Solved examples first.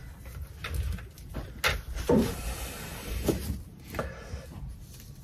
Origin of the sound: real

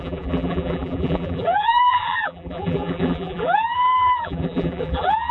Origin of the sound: fake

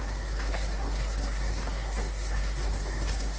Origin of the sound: fake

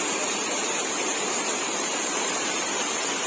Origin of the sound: fake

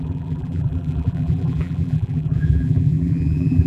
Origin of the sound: fake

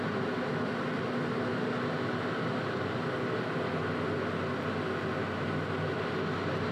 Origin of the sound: real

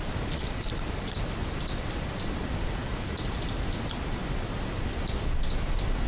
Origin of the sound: real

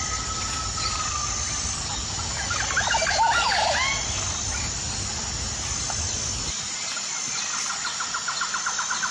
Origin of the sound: real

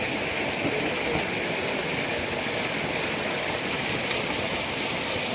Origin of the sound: real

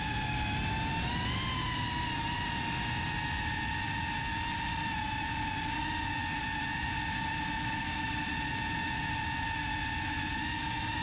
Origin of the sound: real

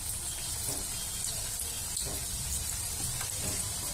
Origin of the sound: real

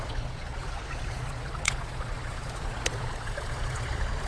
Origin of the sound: fake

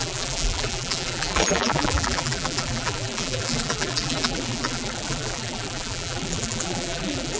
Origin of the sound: fake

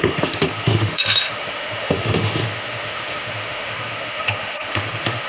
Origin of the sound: fake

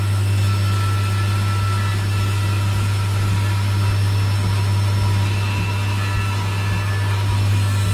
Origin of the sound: real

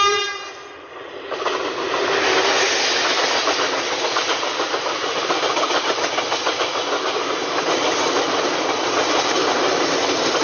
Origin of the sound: real